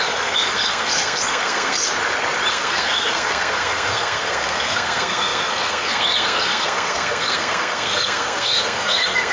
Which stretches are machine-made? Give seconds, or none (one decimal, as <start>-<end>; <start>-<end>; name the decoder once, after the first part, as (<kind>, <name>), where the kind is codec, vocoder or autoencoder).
0.0-1.9 (codec, SNAC); 2.5-9.3